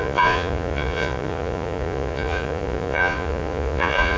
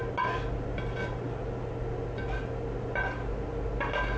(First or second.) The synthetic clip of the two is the first